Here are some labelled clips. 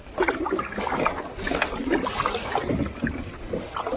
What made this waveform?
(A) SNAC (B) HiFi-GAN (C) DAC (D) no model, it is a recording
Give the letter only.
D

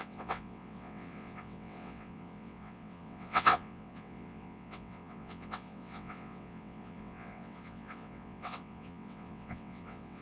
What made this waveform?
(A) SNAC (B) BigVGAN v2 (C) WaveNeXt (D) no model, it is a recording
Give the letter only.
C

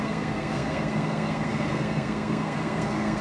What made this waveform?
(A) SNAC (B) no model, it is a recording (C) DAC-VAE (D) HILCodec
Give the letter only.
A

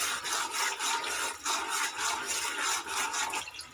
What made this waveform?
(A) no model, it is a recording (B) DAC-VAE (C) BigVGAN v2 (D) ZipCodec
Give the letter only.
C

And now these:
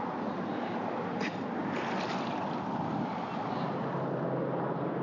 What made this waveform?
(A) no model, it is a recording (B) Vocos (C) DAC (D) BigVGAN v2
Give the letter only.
A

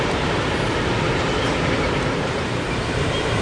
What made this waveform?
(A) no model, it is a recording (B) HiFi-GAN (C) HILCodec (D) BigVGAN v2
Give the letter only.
D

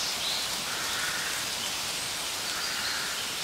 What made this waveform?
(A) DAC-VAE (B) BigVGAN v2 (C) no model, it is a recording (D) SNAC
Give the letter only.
C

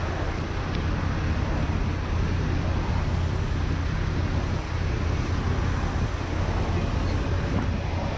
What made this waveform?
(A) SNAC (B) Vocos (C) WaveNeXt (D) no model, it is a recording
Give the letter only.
D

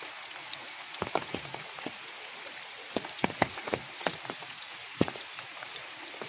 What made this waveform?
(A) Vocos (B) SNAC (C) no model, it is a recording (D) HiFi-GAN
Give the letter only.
A